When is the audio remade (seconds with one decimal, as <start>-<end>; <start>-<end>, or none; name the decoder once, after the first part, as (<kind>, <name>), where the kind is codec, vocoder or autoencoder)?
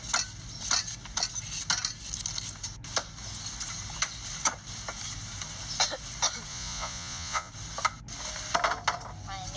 6.5-7.5 (vocoder, Vocos)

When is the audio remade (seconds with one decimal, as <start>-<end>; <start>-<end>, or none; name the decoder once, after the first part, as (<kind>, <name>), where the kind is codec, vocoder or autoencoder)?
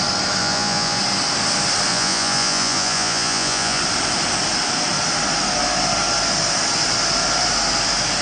0.4-1.0 (vocoder, Vocos); 1.9-3.8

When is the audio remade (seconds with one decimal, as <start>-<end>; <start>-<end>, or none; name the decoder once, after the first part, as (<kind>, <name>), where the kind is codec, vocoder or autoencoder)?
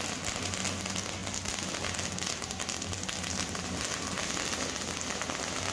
none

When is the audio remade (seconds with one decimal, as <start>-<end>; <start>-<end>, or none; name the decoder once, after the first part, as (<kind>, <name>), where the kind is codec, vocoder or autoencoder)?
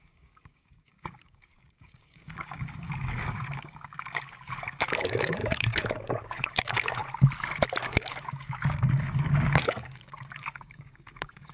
0.0-7.0 (codec, DAC); 7.8-11.5